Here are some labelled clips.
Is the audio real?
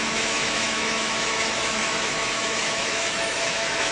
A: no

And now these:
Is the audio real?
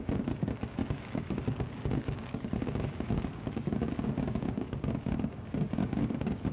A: no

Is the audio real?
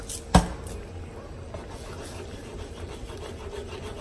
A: yes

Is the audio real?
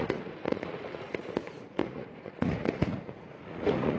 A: no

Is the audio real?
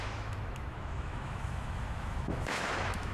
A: no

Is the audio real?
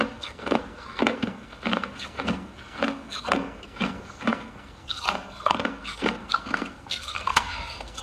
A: no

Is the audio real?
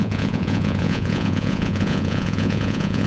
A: no